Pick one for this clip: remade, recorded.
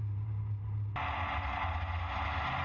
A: recorded